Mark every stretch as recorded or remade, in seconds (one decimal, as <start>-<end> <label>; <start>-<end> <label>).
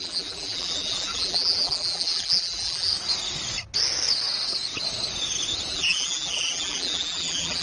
0.0-2.9 remade; 2.9-5.7 recorded; 5.7-7.6 remade